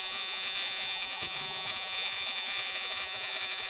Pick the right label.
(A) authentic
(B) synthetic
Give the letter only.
B